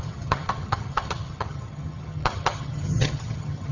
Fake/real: fake